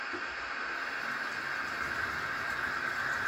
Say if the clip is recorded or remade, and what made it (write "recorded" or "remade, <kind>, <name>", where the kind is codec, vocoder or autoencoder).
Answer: recorded